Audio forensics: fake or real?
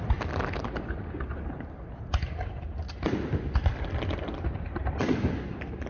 real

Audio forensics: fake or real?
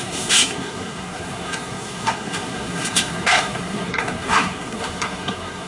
fake